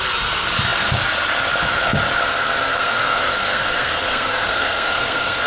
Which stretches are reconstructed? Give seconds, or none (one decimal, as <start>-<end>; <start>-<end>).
2.7-5.5